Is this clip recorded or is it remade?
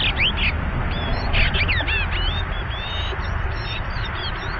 recorded